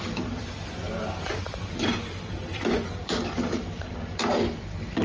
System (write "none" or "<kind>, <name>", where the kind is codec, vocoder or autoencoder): none